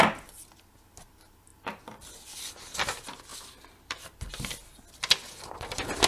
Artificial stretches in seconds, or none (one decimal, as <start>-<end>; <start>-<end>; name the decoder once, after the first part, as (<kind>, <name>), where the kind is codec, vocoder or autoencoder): 3.3-4.3 (vocoder, BigVGAN v2)